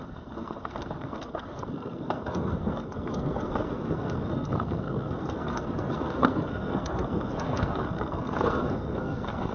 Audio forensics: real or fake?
fake